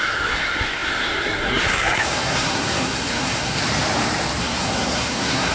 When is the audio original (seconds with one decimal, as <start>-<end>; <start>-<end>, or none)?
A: 3.6-4.4